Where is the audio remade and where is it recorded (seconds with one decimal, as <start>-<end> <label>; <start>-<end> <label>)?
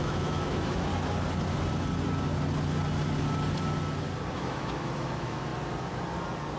0.0-0.9 remade; 0.9-4.3 recorded; 4.3-5.5 remade; 5.5-6.6 recorded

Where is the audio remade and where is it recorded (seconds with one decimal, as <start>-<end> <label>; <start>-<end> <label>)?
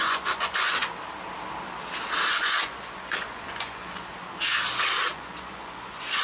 0.0-0.9 remade; 0.9-2.3 recorded; 2.3-4.1 remade; 4.1-5.1 recorded; 5.1-6.2 remade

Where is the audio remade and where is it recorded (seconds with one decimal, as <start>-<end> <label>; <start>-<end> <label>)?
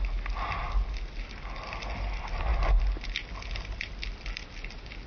0.0-5.1 recorded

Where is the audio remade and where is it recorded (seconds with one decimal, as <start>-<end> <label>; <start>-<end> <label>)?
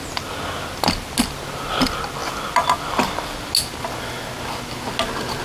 0.0-5.4 recorded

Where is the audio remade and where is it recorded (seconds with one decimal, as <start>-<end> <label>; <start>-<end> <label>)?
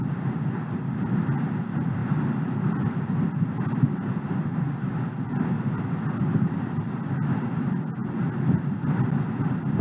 0.0-9.8 recorded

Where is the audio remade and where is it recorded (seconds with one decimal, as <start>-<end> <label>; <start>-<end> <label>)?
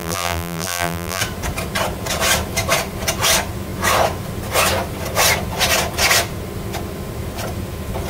0.0-1.2 remade; 1.2-8.1 recorded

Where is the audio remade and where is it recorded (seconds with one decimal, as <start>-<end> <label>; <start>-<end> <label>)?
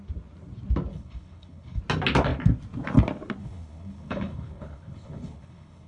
0.0-0.9 recorded; 0.9-1.8 remade; 1.8-3.4 recorded; 3.4-5.9 remade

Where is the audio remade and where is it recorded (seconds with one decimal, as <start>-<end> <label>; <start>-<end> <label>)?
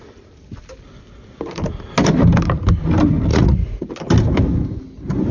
0.0-3.3 recorded; 3.3-3.9 remade; 3.9-5.3 recorded